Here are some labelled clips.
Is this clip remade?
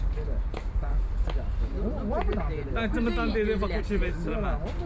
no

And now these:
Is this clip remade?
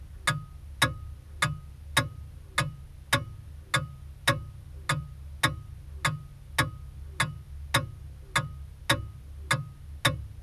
no